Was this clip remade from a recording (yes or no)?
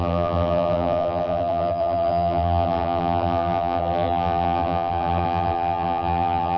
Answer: yes